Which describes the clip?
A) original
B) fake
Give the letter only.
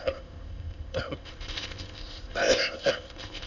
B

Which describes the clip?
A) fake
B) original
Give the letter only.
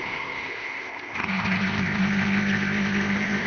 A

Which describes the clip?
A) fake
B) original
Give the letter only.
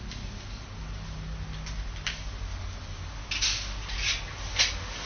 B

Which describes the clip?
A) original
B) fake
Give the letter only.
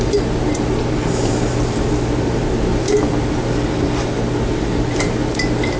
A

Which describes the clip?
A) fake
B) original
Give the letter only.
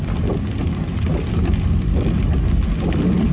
B